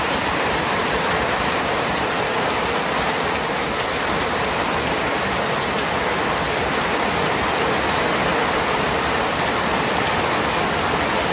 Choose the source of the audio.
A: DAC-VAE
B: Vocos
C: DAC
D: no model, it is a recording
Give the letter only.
D